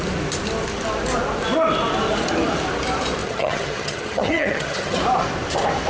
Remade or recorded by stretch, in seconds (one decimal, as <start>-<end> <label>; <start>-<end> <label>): 0.0-3.2 recorded; 3.2-5.0 remade; 5.0-5.9 recorded